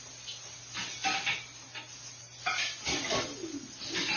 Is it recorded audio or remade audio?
recorded